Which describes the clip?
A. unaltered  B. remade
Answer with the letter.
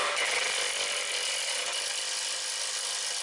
A